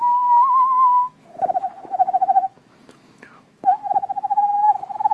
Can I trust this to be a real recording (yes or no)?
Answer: no